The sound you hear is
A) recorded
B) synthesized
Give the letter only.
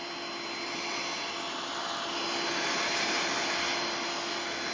A